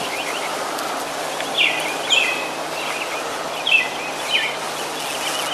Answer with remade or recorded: recorded